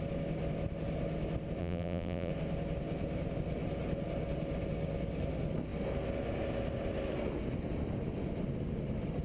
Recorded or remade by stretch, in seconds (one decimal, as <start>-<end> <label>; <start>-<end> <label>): 0.0-1.6 recorded; 1.6-2.3 remade; 2.3-9.2 recorded